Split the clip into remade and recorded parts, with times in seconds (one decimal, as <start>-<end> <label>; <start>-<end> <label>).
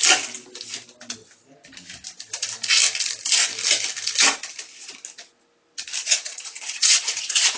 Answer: 0.0-6.0 recorded; 6.0-7.6 remade